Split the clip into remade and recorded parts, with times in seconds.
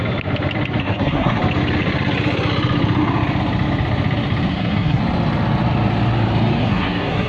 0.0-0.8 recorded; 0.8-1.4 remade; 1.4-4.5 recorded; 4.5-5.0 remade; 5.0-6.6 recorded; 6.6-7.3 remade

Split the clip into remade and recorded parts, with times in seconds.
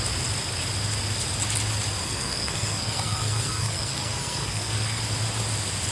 0.0-2.0 recorded; 2.0-5.0 remade; 5.0-5.9 recorded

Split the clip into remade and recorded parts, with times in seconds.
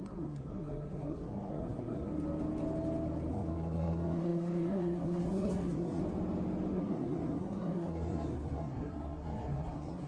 0.0-2.1 remade; 2.1-3.3 recorded; 3.3-6.0 remade; 6.0-6.7 recorded; 6.7-10.1 remade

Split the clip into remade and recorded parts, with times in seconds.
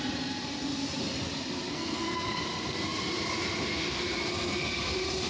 0.0-1.7 recorded; 1.7-2.4 remade; 2.4-5.3 recorded